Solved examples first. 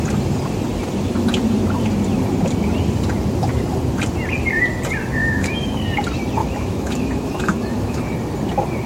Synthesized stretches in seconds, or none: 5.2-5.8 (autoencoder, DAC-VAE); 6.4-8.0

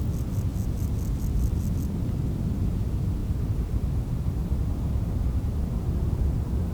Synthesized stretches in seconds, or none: 3.2-3.7 (vocoder, BigVGAN v2); 4.4-5.3